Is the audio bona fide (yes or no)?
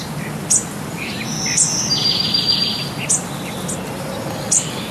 yes